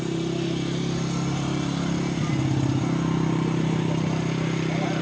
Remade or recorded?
recorded